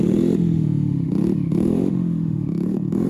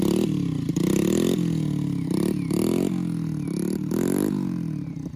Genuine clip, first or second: second